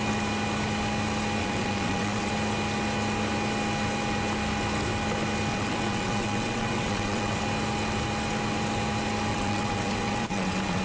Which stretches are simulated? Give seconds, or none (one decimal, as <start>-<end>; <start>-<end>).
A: 1.4-2.3; 5.5-7.4; 9.3-10.8